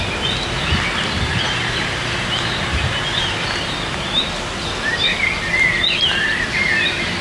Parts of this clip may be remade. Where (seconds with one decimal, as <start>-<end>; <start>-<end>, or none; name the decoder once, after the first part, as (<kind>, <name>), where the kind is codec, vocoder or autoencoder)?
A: 1.3-5.2 (vocoder, BigVGAN v2)